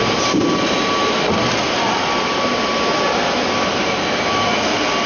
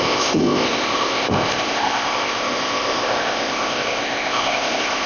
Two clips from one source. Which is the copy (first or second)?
second